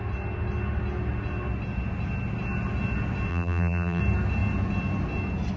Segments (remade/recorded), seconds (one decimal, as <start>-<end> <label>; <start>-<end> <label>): 0.0-3.3 recorded; 3.3-4.0 remade; 4.0-5.6 recorded